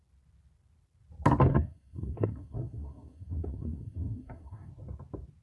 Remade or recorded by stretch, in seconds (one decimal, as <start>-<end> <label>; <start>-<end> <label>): 0.0-1.5 recorded; 1.5-4.7 remade; 4.7-5.4 recorded